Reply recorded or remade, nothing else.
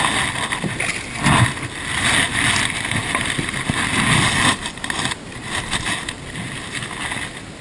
recorded